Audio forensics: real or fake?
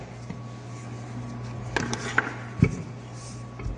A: real